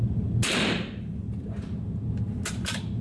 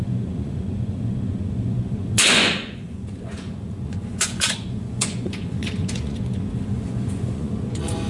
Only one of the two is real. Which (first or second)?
first